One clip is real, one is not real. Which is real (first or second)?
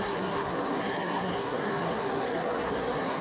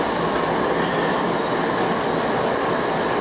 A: second